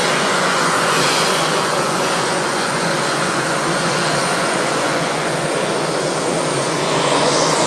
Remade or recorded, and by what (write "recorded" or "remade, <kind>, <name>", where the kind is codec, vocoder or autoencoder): remade, vocoder, Vocos